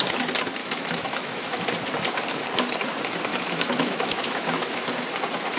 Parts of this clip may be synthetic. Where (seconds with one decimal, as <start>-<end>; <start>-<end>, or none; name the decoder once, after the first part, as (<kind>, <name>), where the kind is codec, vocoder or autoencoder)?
0.6-1.7 (autoencoder, DAC-VAE); 3.3-4.8

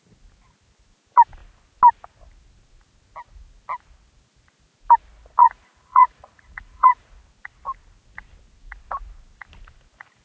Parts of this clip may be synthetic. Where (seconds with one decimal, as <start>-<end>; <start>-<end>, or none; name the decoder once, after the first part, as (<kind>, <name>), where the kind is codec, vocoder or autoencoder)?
5.4-7.2 (vocoder, Vocos)

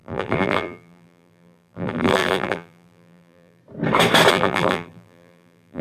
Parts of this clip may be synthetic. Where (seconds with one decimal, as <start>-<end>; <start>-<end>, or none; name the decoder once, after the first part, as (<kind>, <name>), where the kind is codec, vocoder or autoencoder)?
0.0-3.6 (vocoder, BigVGAN v2); 4.3-5.8

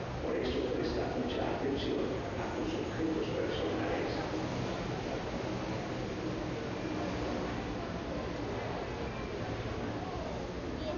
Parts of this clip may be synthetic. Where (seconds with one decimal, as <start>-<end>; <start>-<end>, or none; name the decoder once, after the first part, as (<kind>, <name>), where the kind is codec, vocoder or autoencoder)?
none

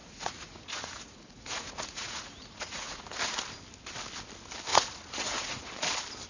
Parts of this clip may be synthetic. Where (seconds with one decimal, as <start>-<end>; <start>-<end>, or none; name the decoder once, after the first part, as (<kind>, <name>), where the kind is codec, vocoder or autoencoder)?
0.0-3.0 (vocoder, Vocos); 4.7-5.7

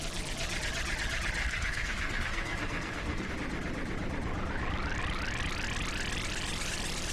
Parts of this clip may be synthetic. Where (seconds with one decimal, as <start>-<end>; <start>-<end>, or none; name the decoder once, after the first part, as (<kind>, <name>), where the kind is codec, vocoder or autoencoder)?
1.4-3.3 (codec, SNAC)

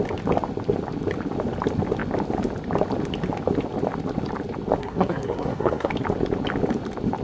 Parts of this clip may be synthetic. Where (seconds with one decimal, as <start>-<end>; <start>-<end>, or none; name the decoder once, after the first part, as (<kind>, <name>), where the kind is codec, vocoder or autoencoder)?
4.8-5.9 (codec, SNAC)

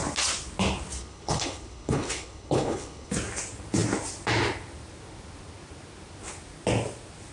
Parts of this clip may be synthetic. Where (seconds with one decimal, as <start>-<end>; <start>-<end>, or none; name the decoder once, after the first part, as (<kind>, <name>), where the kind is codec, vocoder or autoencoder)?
1.0-3.1 (codec, HILCodec)